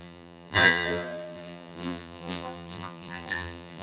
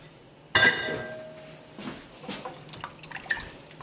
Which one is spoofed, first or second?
first